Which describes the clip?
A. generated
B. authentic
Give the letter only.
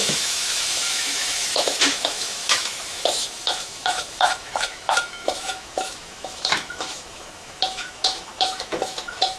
A